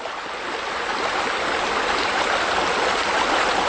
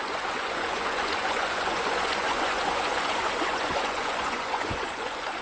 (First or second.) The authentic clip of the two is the first